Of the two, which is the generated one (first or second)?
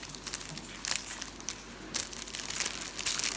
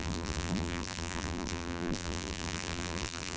second